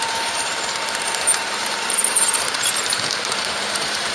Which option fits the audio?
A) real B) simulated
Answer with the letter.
B